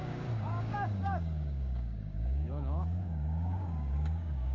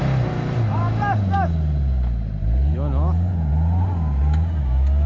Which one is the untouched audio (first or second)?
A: second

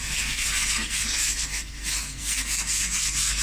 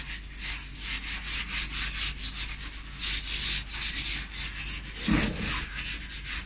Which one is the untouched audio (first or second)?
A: second